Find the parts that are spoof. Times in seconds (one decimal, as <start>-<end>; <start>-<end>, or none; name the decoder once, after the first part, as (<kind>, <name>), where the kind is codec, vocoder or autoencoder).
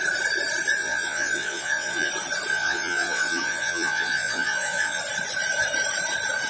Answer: 0.8-2.1 (vocoder, Vocos); 2.5-5.0